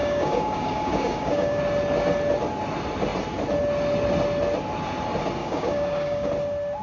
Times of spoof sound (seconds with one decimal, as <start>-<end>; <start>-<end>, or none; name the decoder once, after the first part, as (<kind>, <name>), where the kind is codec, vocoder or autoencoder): 0.0-1.6 (codec, DAC); 5.4-6.3